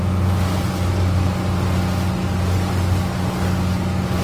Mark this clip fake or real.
real